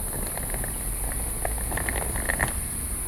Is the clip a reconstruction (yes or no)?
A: no